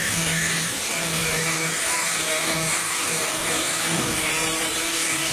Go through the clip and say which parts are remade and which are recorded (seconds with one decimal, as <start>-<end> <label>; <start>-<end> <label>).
0.0-4.3 remade; 4.3-4.8 recorded; 4.8-5.3 remade